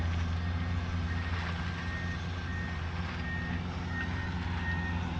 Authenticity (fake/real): real